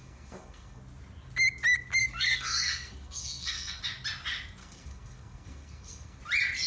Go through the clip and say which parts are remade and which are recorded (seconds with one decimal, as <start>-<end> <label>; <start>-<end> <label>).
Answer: 0.0-0.8 remade; 0.8-2.0 recorded; 2.0-3.8 remade; 3.8-4.6 recorded; 4.6-6.2 remade; 6.2-6.7 recorded